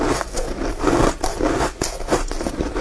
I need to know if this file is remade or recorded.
recorded